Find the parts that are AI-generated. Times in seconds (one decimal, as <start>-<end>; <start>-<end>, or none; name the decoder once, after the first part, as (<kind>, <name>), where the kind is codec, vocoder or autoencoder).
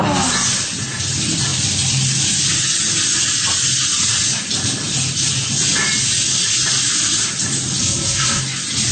7.8-8.4 (codec, SNAC)